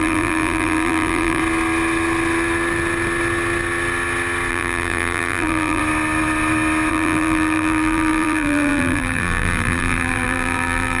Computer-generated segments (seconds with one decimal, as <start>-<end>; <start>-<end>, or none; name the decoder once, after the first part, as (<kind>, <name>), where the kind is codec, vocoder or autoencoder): 0.0-1.4 (vocoder, BigVGAN v2); 4.5-5.8; 6.9-11.0